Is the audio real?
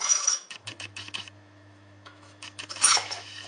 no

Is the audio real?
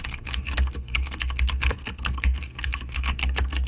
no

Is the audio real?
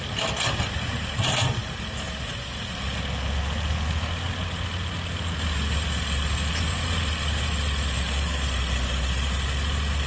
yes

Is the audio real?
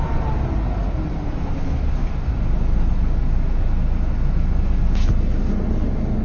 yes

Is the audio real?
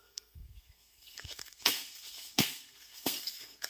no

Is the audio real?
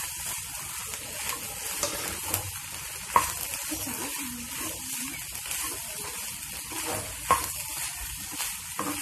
yes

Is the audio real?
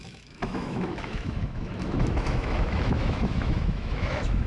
no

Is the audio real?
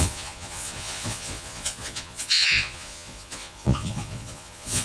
no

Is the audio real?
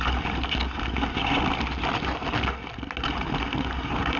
yes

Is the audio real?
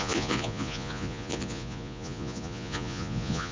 no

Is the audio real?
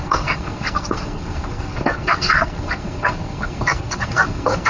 no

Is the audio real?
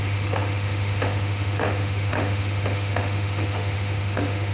no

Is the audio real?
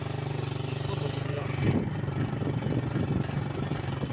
yes